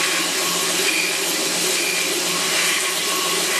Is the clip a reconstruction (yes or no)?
no